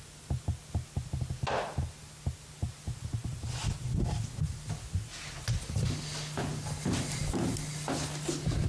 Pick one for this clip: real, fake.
real